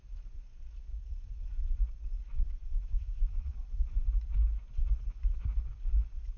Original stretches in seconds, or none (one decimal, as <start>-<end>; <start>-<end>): 0.0-1.0; 1.8-2.3; 3.5-6.4